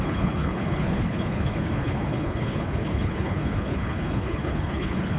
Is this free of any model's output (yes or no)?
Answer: no